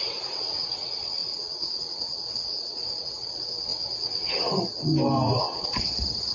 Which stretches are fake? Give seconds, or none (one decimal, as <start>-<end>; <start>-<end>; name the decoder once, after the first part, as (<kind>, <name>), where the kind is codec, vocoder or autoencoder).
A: 0.0-4.9 (vocoder, WaveNeXt); 5.4-6.3